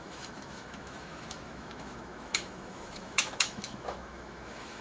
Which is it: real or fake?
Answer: fake